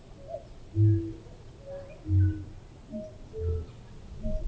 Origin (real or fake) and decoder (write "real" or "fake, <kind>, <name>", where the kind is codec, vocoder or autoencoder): real